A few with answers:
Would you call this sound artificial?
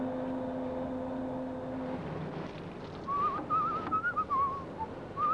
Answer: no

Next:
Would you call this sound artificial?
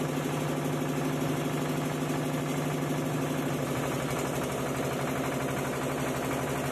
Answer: no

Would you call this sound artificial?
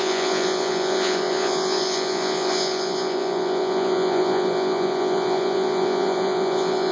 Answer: yes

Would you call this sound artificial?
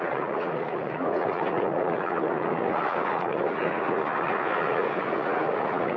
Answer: yes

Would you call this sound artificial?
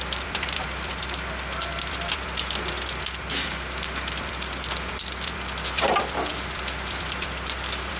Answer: yes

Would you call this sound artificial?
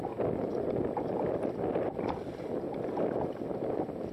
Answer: no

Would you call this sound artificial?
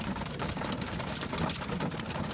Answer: yes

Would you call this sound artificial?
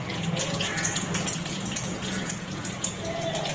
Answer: yes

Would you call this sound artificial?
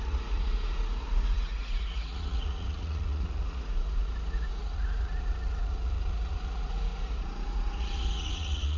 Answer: yes